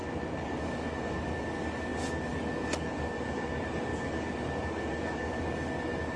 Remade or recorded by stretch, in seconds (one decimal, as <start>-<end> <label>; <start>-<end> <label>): 0.0-0.6 recorded; 0.6-6.2 remade